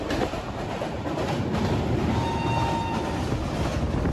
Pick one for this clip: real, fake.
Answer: real